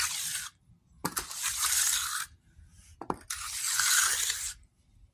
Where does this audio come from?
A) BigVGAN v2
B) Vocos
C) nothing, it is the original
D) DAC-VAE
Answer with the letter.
C